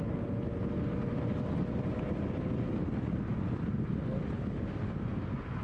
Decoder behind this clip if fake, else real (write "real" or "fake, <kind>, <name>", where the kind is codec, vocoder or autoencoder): real